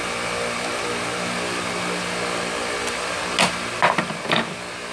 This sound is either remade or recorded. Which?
recorded